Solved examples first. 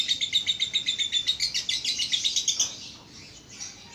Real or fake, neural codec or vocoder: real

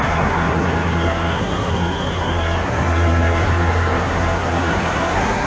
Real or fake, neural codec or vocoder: fake, codec, SNAC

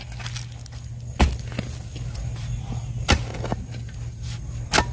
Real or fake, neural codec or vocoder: real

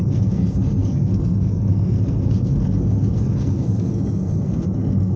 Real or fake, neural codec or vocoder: fake, codec, SNAC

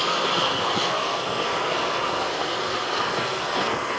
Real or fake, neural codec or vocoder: fake, codec, SNAC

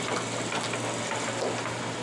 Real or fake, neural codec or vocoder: real